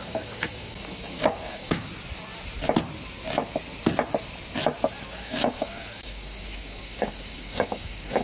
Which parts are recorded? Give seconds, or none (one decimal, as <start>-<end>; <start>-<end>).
1.9-5.1